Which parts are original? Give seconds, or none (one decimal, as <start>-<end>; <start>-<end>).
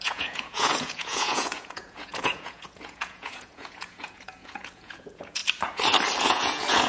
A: 5.4-6.2